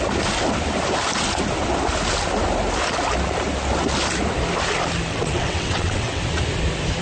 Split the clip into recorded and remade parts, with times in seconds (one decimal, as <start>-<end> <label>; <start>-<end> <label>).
0.0-5.1 recorded; 5.1-6.2 remade; 6.2-7.0 recorded